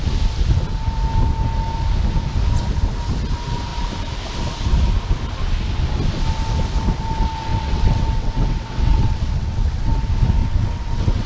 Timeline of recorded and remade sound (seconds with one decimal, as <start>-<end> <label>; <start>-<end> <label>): 0.0-7.5 recorded; 7.5-9.9 remade; 9.9-10.4 recorded; 10.4-11.3 remade